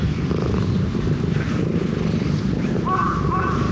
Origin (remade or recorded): recorded